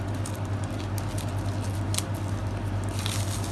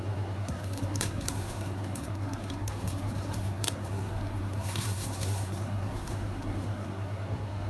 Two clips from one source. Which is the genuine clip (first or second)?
first